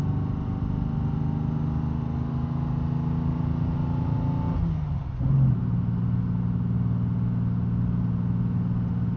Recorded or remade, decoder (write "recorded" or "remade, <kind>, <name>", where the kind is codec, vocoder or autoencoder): recorded